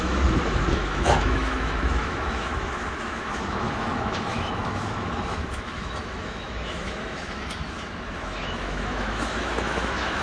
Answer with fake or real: fake